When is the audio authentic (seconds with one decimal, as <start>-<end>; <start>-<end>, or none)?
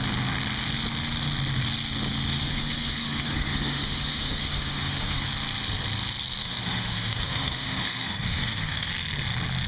0.0-2.3; 5.3-6.4; 8.9-9.7